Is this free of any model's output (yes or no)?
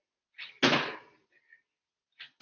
yes